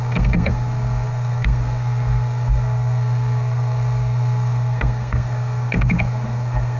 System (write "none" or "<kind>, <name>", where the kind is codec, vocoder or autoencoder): codec, SNAC